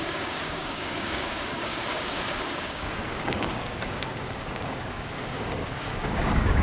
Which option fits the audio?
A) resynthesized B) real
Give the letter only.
A